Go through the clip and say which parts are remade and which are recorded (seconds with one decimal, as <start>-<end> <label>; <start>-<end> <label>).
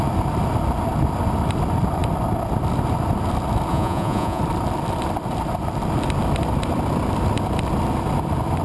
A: 0.0-3.7 recorded; 3.7-4.4 remade; 4.4-8.6 recorded